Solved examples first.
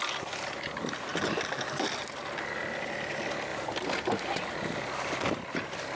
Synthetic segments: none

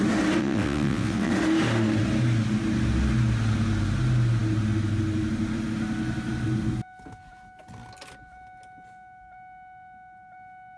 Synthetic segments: 0.4-1.3 (vocoder, WaveNeXt)

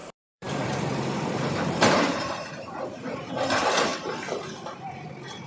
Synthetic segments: 0.0-3.3 (vocoder, BigVGAN v2)